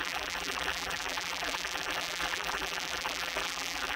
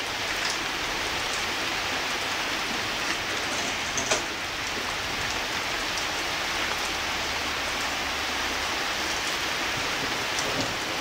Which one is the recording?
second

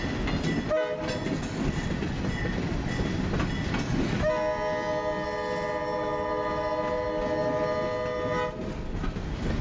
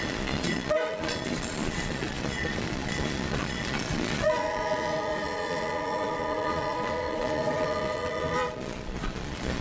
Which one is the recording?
first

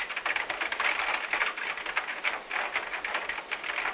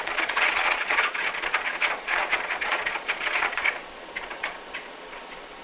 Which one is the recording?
first